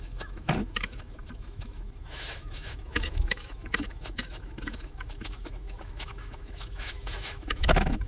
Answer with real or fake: fake